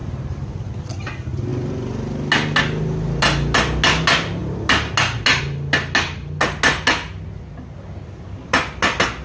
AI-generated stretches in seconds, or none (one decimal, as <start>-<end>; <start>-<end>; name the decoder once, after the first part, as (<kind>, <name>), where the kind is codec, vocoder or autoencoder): 0.0-0.7 (vocoder, BigVGAN v2)

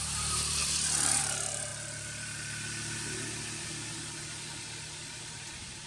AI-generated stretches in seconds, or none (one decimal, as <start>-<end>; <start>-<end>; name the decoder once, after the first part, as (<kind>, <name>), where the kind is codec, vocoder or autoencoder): 0.0-1.7 (vocoder, BigVGAN v2); 5.2-5.9

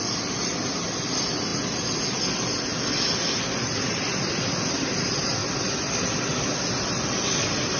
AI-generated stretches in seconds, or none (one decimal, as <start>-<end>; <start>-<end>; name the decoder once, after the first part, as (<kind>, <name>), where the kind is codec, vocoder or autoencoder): none

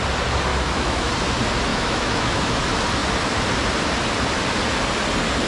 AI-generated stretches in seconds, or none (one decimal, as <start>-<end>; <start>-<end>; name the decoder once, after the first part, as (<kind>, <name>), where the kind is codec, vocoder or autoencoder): 0.5-1.1 (autoencoder, DAC-VAE); 1.7-2.6

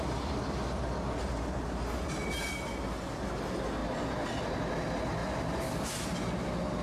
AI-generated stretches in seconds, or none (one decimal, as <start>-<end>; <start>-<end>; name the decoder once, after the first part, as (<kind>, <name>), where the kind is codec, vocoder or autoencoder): none

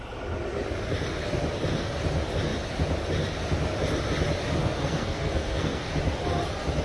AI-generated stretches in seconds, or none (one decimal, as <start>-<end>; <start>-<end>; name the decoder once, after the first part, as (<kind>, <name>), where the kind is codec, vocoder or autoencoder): 4.6-5.8 (codec, SNAC)

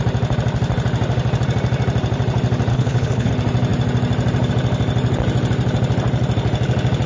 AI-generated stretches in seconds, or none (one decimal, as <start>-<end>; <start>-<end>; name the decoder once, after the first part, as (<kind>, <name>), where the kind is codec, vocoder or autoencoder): 2.7-3.3 (codec, HILCodec)